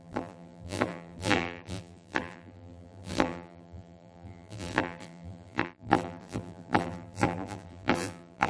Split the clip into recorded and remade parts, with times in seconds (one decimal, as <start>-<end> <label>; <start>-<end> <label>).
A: 0.0-8.5 remade